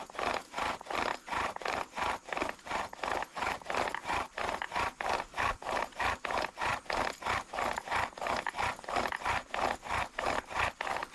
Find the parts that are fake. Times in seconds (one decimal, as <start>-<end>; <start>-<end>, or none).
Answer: 1.1-1.8; 3.3-4.4